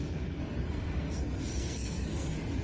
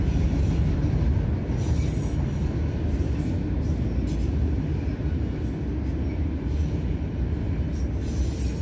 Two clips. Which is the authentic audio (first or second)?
second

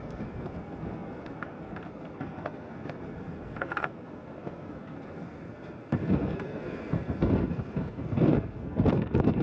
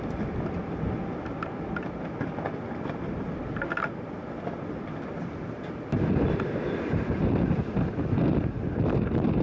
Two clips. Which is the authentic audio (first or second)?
second